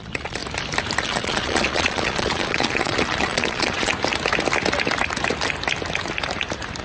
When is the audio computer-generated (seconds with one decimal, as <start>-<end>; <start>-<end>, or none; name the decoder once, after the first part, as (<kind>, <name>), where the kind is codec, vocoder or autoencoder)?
0.0-0.4 (vocoder, Vocos); 1.0-3.9